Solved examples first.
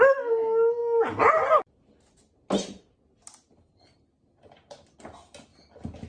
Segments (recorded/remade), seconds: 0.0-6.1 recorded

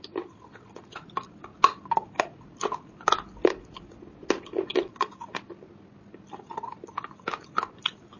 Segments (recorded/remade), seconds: 0.0-8.2 recorded

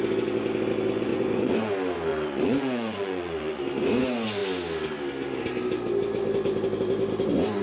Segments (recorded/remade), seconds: 0.0-1.1 recorded; 1.1-1.7 remade; 1.7-2.1 recorded; 2.1-3.6 remade; 3.6-7.6 recorded

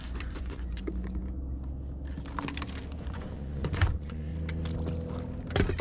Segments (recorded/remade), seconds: 0.0-1.2 remade; 1.2-3.0 recorded; 3.0-4.3 remade; 4.3-5.8 recorded

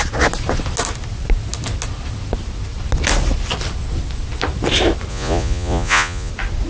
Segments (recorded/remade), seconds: 0.0-5.1 recorded; 5.1-6.3 remade; 6.3-6.7 recorded

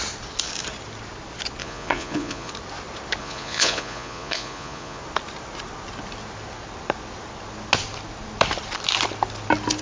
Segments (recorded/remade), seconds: 0.0-1.6 recorded; 1.6-2.5 remade; 2.5-3.2 recorded; 3.2-5.0 remade; 5.0-9.8 recorded

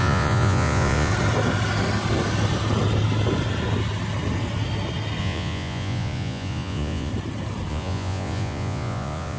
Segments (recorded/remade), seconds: 0.0-1.1 remade; 1.1-5.2 recorded; 5.2-7.1 remade; 7.1-7.7 recorded; 7.7-9.4 remade